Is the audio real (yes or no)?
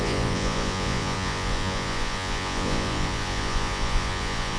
no